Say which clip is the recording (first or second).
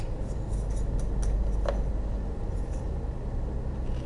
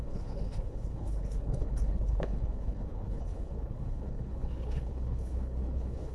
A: first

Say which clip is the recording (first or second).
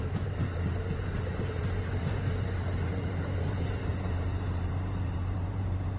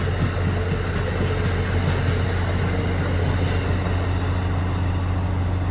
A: second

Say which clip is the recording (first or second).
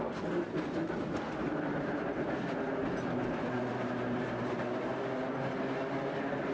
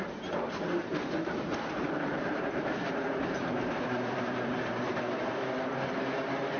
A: first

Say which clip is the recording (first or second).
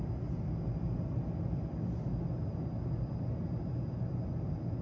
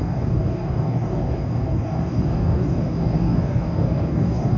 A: first